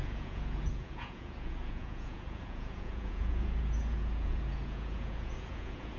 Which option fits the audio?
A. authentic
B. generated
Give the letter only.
B